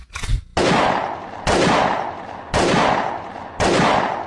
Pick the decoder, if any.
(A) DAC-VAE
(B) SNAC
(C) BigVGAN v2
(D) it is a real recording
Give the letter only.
D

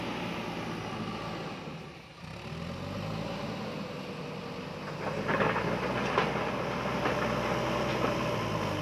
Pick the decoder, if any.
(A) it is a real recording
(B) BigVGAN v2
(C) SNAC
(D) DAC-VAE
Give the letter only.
A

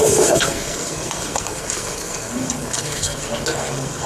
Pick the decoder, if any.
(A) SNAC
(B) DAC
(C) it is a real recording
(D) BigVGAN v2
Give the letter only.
A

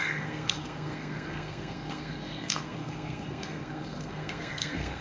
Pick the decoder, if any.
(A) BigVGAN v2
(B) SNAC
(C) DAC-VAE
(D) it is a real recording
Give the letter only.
B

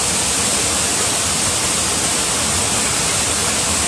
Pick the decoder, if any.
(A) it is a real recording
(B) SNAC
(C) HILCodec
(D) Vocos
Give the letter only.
A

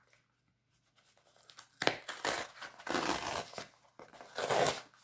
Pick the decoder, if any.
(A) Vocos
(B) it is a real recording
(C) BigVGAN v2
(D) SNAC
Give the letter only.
B